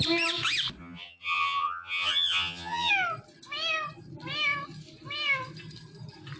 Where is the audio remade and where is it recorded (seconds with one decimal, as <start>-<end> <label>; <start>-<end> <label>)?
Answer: 0.0-0.8 recorded; 0.8-2.9 remade; 2.9-6.4 recorded